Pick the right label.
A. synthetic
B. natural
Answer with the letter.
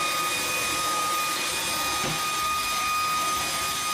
B